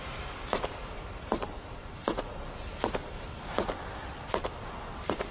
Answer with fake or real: fake